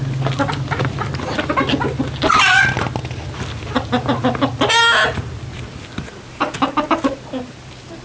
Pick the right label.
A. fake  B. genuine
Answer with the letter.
B